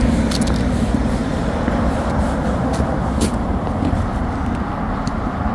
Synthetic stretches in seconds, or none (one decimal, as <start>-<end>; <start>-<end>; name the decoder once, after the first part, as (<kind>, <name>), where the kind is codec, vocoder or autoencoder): 1.2-2.6 (vocoder, BigVGAN v2)